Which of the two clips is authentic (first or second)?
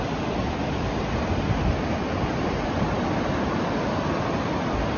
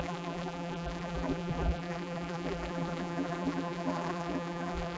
first